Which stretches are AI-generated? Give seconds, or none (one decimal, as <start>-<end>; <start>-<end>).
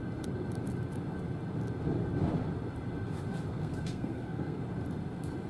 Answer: 3.5-4.6